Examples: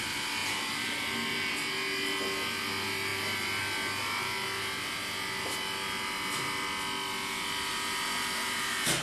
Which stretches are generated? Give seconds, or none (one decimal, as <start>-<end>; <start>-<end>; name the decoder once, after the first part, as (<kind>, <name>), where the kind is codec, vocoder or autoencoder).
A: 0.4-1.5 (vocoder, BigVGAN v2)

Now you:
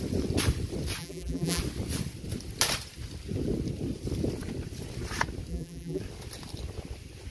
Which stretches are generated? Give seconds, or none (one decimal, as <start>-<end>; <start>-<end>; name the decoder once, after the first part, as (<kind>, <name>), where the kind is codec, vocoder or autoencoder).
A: 1.0-1.6 (vocoder, BigVGAN v2); 5.5-6.0

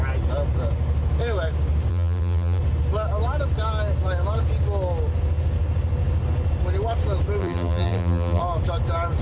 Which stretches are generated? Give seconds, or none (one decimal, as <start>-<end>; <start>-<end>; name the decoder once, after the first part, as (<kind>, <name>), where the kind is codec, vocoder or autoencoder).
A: 1.9-2.6 (vocoder, BigVGAN v2); 7.4-8.4